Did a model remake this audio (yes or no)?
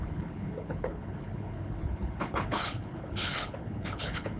yes